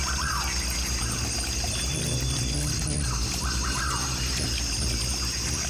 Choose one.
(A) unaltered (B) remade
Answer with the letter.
A